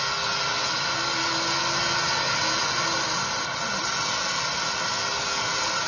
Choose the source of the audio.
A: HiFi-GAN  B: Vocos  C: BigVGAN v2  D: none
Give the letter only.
D